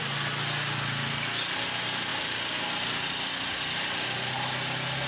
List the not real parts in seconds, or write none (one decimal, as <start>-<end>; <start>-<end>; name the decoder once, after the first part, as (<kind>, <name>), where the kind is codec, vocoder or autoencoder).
none